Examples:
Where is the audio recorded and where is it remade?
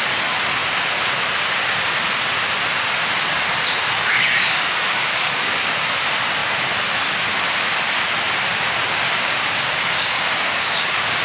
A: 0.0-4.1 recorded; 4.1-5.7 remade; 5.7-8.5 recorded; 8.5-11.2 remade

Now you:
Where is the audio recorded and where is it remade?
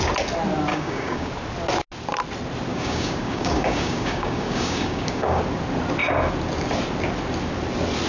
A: 0.0-0.7 recorded; 0.7-1.3 remade; 1.3-2.7 recorded; 2.7-5.4 remade; 5.4-8.1 recorded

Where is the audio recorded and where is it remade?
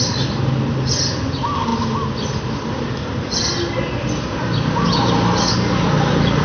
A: 0.0-6.4 recorded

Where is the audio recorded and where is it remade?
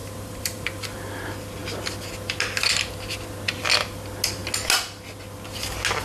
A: 0.0-1.1 remade; 1.1-6.0 recorded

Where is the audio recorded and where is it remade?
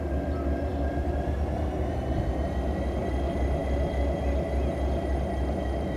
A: 0.0-6.0 recorded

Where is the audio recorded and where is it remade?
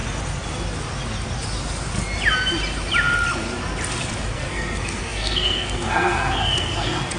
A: 0.0-4.3 recorded; 4.3-7.2 remade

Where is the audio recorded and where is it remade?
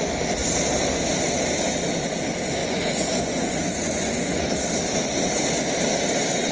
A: 0.0-2.6 recorded; 2.6-4.4 remade; 4.4-6.5 recorded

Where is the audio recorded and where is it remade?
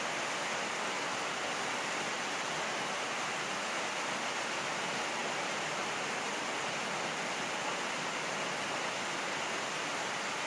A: 0.0-10.5 recorded